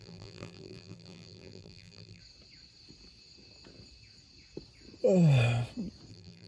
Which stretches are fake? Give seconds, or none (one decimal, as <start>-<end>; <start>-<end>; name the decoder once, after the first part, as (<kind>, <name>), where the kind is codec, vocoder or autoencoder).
0.0-2.2 (vocoder, BigVGAN v2); 6.1-6.5